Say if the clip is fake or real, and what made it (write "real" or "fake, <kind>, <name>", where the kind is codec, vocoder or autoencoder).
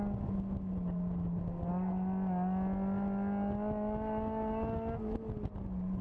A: real